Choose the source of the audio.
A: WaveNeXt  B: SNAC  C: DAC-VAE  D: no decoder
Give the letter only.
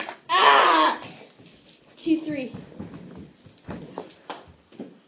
D